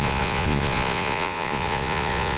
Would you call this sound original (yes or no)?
no